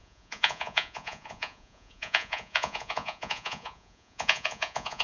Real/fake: fake